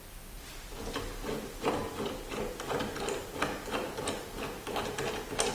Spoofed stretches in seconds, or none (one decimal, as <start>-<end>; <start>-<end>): none